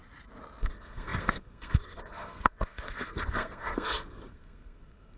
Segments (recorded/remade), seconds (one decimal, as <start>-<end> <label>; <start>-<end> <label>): 0.0-0.6 recorded; 0.6-5.2 remade